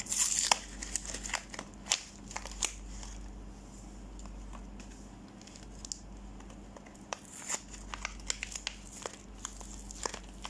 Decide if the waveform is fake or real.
real